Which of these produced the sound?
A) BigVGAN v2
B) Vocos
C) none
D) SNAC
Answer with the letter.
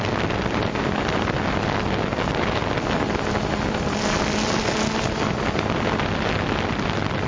C